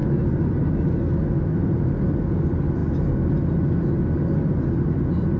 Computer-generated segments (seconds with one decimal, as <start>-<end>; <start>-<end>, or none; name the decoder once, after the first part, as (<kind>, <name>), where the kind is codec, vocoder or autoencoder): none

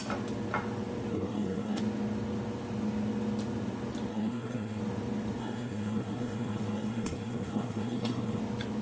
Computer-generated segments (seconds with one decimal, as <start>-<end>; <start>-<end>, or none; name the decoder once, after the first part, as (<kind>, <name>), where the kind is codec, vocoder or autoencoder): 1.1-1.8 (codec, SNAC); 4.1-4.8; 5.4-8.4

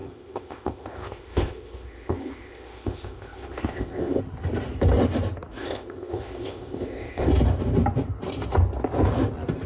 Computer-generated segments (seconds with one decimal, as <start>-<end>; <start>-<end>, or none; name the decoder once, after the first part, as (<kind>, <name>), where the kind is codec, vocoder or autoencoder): 0.0-4.2 (codec, ZipCodec); 5.6-7.3

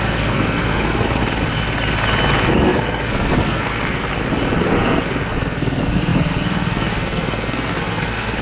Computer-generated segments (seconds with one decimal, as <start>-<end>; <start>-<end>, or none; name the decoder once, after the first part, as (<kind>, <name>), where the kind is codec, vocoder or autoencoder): 0.0-1.2 (codec, SNAC); 2.5-4.1; 4.6-8.4

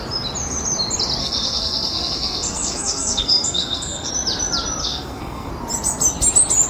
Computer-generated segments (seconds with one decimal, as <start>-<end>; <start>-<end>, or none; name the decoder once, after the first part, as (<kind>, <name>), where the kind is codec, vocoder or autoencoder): 1.2-4.1 (codec, SNAC); 4.8-5.5